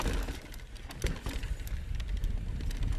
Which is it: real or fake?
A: real